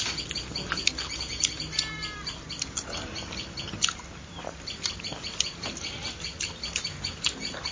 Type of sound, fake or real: real